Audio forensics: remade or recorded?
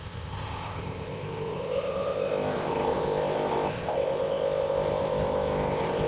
remade